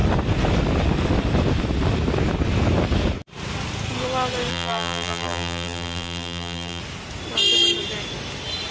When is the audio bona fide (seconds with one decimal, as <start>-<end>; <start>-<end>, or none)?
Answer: 0.0-4.5; 6.8-8.7